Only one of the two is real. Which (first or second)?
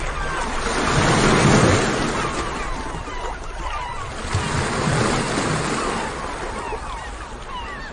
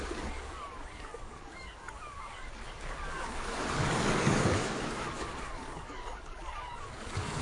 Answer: first